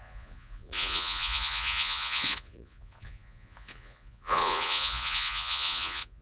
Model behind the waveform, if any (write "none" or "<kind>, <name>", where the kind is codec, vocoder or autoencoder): vocoder, Vocos